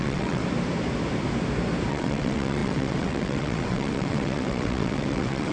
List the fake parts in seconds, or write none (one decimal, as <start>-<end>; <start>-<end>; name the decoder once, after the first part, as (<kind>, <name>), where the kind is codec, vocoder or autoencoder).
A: 0.0-0.4 (vocoder, WaveNeXt); 1.9-5.5